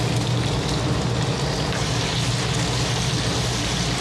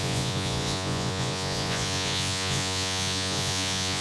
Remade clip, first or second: second